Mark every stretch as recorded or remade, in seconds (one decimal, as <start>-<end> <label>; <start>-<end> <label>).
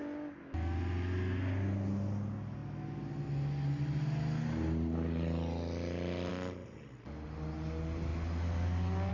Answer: 0.0-9.1 recorded